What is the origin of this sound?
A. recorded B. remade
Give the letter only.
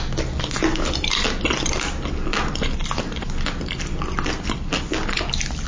A